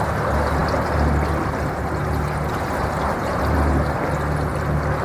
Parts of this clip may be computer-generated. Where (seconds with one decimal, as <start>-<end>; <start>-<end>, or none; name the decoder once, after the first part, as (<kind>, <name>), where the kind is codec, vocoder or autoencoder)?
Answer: 2.8-3.4 (vocoder, BigVGAN v2)

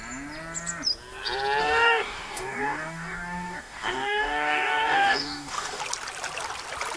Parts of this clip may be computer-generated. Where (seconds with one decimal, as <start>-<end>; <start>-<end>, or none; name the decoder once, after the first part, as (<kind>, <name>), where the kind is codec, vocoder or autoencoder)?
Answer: 1.6-5.8 (codec, DAC)